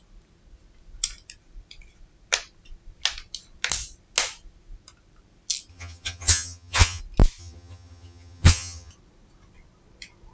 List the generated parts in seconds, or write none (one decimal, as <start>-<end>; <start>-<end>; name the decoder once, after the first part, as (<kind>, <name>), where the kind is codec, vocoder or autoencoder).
5.7-7.0 (vocoder, HiFi-GAN); 7.4-8.9